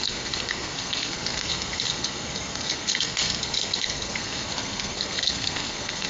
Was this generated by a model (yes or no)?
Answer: yes